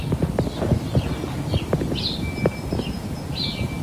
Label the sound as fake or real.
real